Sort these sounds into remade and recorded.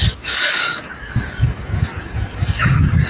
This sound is remade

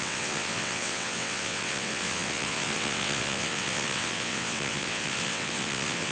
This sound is remade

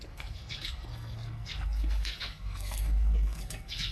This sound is remade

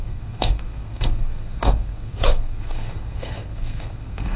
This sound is remade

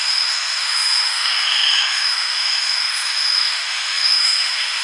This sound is remade